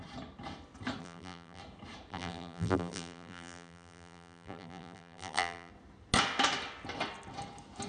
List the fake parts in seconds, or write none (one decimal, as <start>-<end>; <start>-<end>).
1.0-1.6; 2.1-5.7